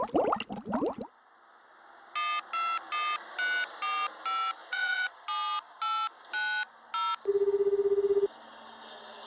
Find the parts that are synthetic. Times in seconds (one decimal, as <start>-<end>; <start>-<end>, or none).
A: 4.6-5.1